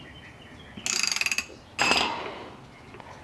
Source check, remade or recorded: recorded